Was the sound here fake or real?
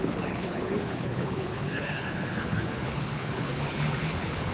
fake